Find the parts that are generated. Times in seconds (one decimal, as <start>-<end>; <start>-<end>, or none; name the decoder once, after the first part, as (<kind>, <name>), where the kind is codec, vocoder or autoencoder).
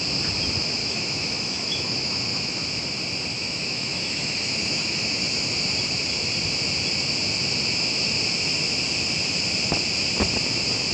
0.8-2.8 (autoencoder, DAC-VAE); 3.3-5.2